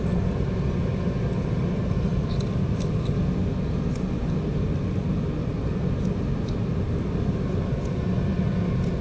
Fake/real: real